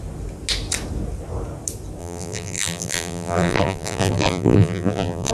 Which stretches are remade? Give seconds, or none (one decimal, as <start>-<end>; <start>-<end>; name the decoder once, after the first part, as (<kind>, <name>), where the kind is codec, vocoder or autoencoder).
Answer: 2.0-5.3 (vocoder, BigVGAN v2)